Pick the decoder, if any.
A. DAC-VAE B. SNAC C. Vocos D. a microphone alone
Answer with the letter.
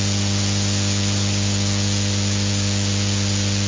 C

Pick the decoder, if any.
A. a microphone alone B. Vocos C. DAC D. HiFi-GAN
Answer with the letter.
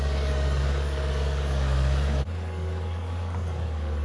C